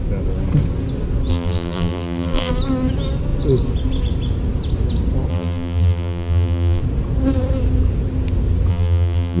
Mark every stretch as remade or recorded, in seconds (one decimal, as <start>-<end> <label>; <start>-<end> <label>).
0.0-1.3 recorded; 1.3-2.5 remade; 2.5-5.3 recorded; 5.3-6.8 remade; 6.8-8.7 recorded; 8.7-9.4 remade